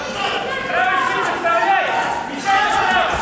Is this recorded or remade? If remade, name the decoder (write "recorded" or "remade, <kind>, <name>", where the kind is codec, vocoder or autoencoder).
recorded